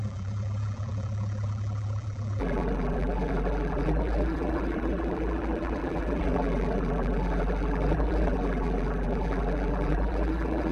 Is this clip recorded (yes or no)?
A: no